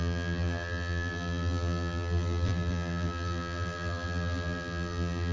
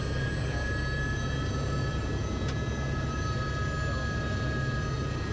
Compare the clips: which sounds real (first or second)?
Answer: second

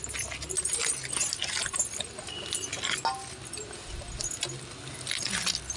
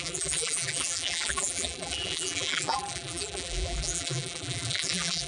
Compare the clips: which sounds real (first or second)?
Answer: first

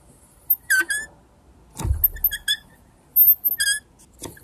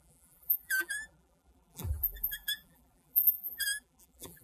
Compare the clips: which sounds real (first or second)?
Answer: first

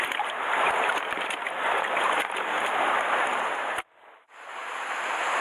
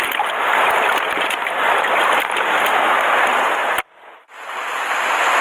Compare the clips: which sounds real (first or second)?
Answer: second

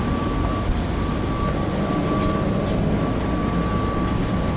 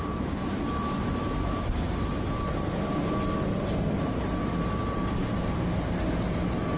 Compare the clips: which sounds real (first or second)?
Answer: first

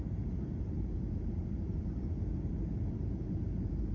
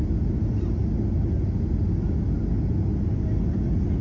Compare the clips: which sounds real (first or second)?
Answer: second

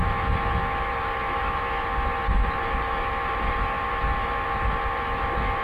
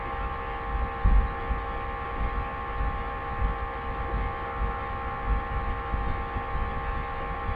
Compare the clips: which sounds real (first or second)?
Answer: second